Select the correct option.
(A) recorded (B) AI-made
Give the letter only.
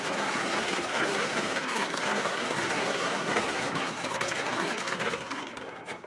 B